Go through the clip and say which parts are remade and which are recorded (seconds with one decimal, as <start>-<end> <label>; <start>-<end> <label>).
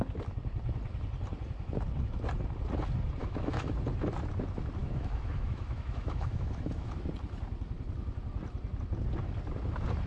0.0-3.2 recorded; 3.2-3.7 remade; 3.7-4.8 recorded; 4.8-6.9 remade; 6.9-10.1 recorded